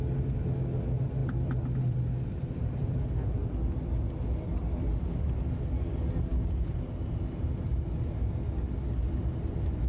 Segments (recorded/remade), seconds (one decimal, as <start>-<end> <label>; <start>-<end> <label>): 0.0-1.2 recorded; 1.2-3.0 remade; 3.0-3.4 recorded; 3.4-5.0 remade; 5.0-6.3 recorded; 6.3-7.7 remade; 7.7-9.9 recorded